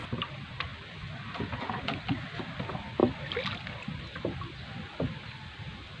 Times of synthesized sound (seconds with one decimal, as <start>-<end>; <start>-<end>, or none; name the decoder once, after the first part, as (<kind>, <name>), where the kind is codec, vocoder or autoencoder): none